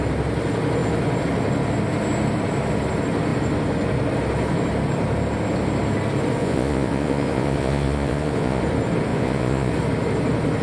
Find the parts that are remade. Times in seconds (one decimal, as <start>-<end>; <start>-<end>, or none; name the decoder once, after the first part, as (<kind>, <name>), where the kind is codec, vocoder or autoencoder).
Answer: 6.4-8.6 (vocoder, Vocos); 9.1-9.7